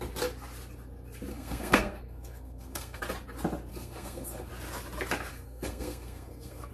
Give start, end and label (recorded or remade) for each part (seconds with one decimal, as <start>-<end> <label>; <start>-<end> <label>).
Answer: 0.0-1.3 recorded; 1.3-3.0 remade; 3.0-3.7 recorded; 3.7-4.5 remade; 4.5-5.3 recorded; 5.3-6.7 remade

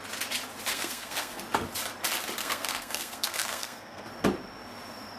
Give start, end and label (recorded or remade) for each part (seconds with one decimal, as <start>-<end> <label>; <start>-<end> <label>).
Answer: 0.0-0.7 recorded; 0.7-1.4 remade; 1.4-2.4 recorded; 2.4-4.1 remade; 4.1-5.2 recorded

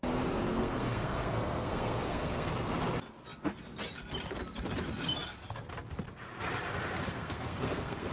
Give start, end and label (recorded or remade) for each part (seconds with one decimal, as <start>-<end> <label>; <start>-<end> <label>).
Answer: 0.0-0.5 recorded; 0.5-2.5 remade; 2.5-7.1 recorded; 7.1-8.1 remade